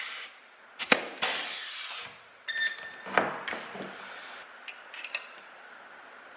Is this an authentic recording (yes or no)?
yes